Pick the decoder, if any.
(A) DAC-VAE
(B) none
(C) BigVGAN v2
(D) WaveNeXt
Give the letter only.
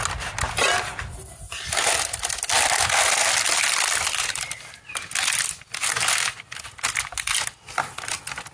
B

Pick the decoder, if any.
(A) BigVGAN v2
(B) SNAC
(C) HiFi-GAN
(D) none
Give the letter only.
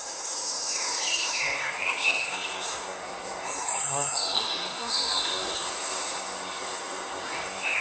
B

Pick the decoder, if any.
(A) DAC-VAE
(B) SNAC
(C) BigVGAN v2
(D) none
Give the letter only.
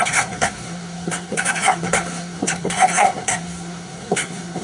B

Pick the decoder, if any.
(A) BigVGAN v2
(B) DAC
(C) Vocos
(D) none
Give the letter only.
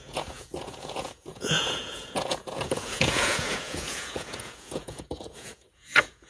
C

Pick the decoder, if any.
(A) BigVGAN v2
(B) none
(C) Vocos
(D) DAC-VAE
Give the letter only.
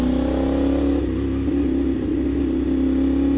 B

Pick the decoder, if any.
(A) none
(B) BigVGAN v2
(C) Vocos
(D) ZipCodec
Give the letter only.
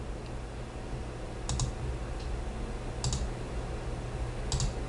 A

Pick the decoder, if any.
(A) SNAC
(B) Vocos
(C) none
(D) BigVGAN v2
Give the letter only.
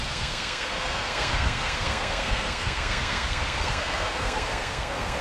A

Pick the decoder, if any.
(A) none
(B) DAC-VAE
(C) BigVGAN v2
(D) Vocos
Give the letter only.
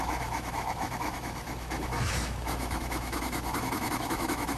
B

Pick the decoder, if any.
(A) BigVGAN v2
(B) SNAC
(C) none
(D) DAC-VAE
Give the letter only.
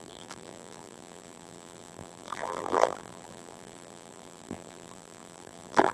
A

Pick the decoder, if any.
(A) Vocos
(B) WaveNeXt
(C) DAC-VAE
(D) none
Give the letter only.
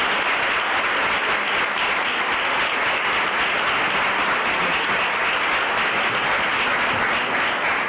D